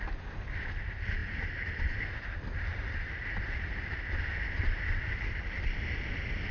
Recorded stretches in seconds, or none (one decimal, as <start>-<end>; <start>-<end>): 0.0-6.5